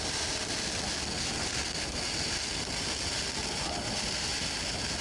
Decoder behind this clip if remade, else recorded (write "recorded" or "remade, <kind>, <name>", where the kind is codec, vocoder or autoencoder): recorded